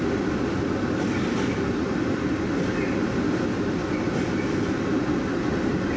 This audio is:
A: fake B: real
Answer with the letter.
B